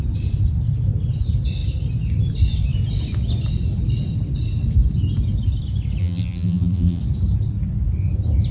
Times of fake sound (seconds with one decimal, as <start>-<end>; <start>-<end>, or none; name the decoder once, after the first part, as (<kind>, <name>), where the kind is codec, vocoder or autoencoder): 6.0-7.0 (vocoder, BigVGAN v2)